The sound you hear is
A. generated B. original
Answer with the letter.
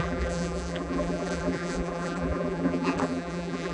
A